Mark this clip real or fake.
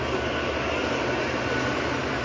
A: real